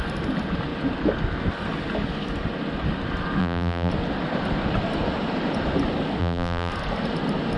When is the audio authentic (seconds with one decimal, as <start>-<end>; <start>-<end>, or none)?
0.0-3.4; 3.9-6.2; 6.7-7.6